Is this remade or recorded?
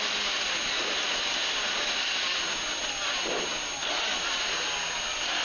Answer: recorded